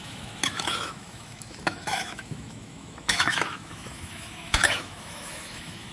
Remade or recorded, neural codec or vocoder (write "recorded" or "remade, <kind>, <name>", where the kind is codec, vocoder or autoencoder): remade, autoencoder, DAC-VAE